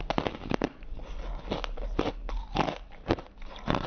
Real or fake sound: real